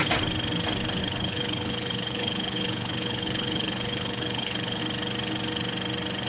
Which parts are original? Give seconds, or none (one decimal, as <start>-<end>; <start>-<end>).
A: 0.0-1.0; 4.8-6.3